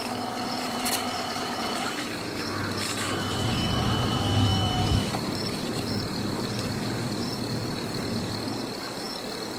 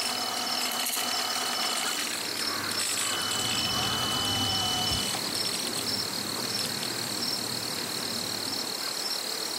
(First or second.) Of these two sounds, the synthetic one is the first